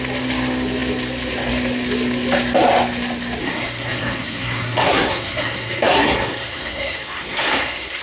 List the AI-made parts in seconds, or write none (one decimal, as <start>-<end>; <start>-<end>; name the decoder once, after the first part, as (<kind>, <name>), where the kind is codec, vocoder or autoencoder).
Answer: 3.4-8.0 (codec, SNAC)